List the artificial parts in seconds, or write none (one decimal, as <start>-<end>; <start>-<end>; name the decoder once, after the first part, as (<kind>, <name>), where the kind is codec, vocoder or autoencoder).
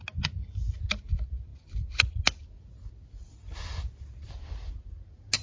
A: none